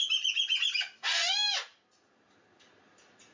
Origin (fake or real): real